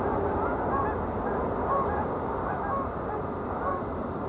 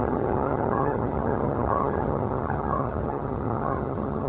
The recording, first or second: first